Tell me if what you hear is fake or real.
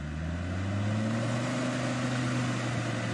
real